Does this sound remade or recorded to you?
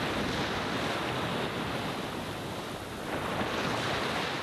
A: recorded